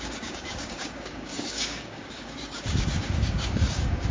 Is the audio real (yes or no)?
no